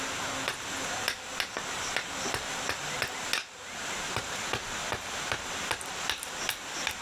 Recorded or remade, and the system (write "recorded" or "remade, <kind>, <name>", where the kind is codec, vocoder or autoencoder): recorded